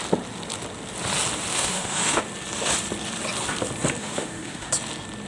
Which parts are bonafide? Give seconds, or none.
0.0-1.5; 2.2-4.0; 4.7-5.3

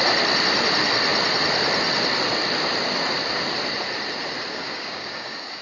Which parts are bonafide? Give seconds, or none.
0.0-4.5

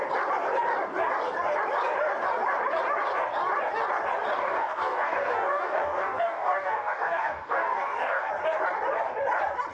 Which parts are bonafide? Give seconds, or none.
0.0-4.4; 8.3-9.7